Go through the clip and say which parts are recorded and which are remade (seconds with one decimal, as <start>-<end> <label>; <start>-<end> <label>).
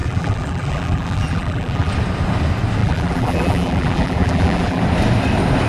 0.0-1.9 remade; 1.9-2.8 recorded; 2.8-4.8 remade; 4.8-5.7 recorded